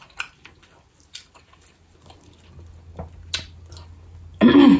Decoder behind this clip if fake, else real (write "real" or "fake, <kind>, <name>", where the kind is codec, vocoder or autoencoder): real